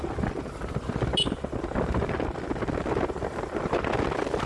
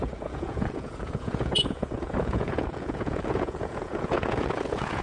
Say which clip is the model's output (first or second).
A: second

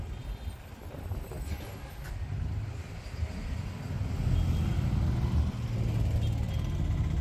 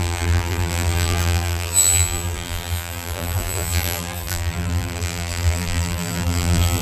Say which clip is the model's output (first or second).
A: second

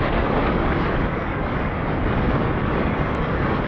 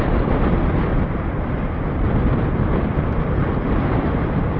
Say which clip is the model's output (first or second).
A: first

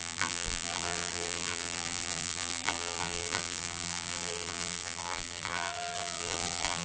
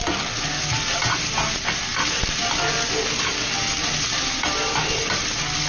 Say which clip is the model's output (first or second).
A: first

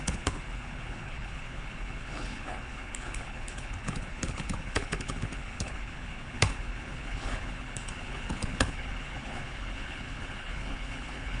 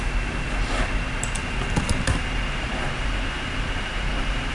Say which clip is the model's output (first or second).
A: first